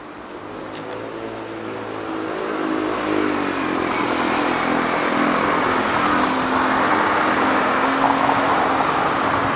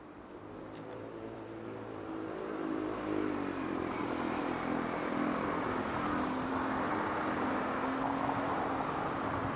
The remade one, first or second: second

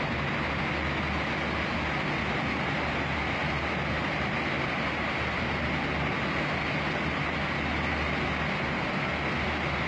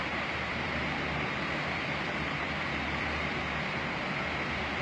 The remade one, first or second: second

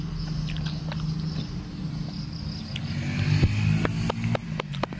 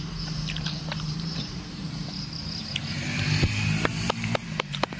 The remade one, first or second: second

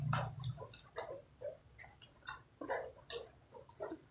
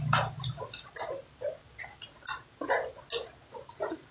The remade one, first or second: first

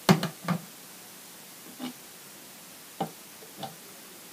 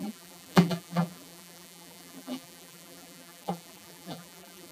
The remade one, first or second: second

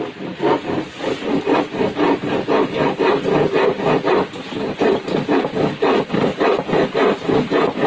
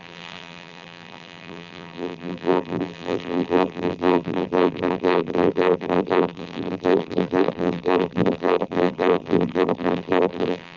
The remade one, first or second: second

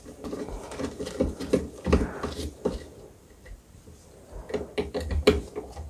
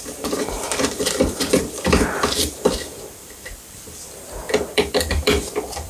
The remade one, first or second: second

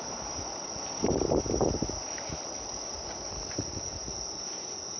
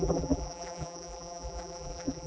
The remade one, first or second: second